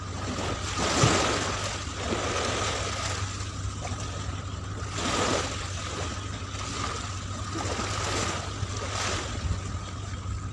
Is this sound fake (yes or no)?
no